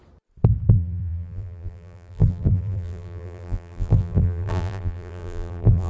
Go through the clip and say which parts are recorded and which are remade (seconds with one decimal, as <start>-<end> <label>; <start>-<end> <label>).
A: 0.0-0.7 recorded; 0.7-5.9 remade